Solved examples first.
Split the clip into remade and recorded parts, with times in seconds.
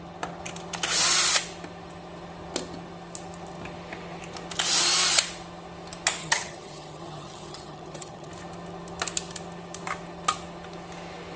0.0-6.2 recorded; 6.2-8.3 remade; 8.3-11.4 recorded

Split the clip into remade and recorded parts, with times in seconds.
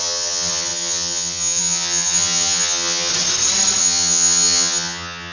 0.0-3.1 remade; 3.1-3.8 recorded; 3.8-5.3 remade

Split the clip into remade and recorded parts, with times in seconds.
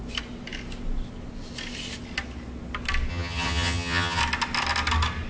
0.0-3.1 recorded; 3.1-4.2 remade; 4.2-5.3 recorded